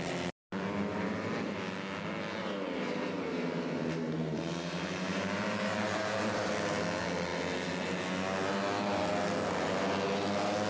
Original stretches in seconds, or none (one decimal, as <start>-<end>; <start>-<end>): 0.0-2.4; 6.5-10.7